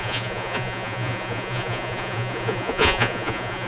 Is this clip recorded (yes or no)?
no